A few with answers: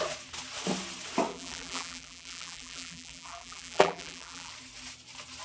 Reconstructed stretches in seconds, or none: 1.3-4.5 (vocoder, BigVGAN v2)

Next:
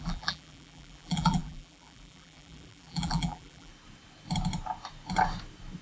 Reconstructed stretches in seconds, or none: 0.0-3.7 (vocoder, BigVGAN v2)

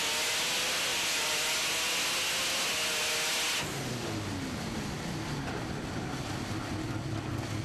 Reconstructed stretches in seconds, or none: 0.9-1.5 (vocoder, BigVGAN v2)

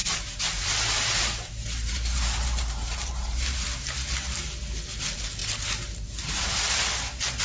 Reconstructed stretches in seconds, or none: 0.0-4.4 (vocoder, BigVGAN v2)

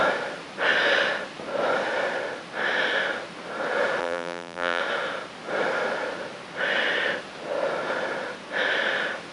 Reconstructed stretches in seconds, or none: 4.0-4.8 (vocoder, BigVGAN v2)